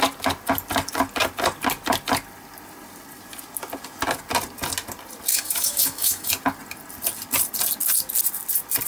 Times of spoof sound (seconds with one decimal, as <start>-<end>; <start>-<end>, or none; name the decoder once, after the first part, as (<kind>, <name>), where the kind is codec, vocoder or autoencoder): 5.3-6.3 (autoencoder, DAC-VAE)

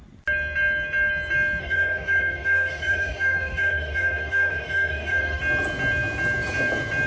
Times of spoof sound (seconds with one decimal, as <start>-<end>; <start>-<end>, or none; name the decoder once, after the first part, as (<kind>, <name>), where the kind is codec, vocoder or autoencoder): 1.6-5.4 (autoencoder, DAC-VAE)

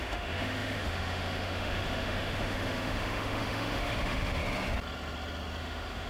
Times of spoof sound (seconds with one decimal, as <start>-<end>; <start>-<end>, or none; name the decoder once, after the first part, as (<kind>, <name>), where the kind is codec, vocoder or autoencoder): 0.0-4.4 (autoencoder, DAC-VAE); 5.6-6.1

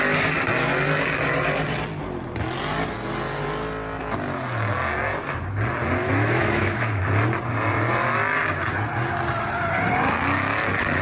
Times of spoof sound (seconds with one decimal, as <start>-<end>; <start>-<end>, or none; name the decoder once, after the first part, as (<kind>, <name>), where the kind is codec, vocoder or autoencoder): 6.0-7.0 (autoencoder, DAC-VAE)

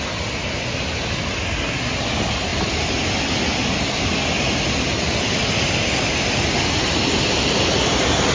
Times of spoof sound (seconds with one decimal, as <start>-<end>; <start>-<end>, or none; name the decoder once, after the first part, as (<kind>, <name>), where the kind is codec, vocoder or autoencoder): none